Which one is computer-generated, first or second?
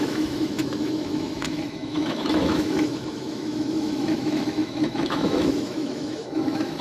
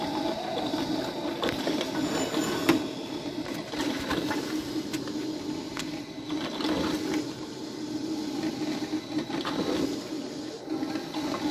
first